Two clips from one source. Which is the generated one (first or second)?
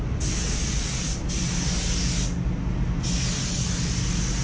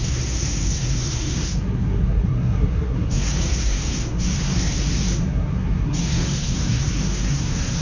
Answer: second